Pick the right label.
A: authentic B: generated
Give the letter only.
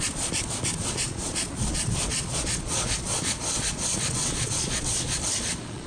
B